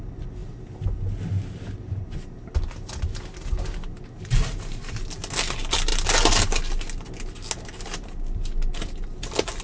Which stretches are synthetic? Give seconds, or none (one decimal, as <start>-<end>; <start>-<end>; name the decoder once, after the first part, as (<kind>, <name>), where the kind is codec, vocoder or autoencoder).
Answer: none